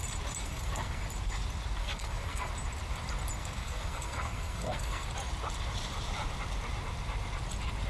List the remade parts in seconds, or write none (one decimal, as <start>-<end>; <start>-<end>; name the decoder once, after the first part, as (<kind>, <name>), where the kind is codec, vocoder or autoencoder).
0.4-1.0 (codec, SNAC); 1.8-2.5; 3.4-5.1